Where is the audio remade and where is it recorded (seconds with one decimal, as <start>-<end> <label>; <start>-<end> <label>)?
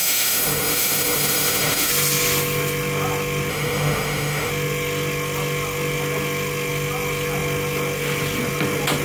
0.0-1.9 remade; 1.9-3.5 recorded; 3.5-4.5 remade; 4.5-9.0 recorded